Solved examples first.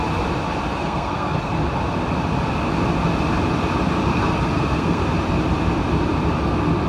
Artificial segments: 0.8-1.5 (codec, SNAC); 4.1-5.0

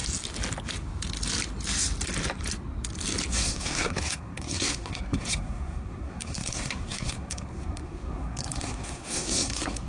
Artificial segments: 3.3-9.9 (codec, SNAC)

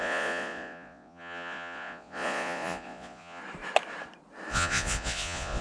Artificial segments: 0.0-3.4 (vocoder, Vocos); 4.5-5.6

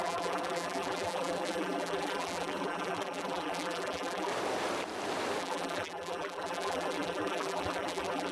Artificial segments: 0.0-4.3 (vocoder, BigVGAN v2); 5.4-8.3

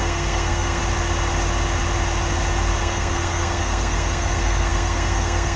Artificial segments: 0.0-0.8 (codec, SNAC); 2.8-5.6